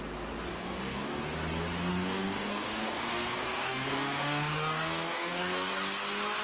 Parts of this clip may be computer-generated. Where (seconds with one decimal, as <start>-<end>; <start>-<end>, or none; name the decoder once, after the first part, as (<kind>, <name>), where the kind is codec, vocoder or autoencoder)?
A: 0.5-1.2 (codec, DAC); 1.9-5.7